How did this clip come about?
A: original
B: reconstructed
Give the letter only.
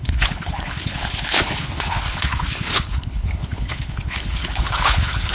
B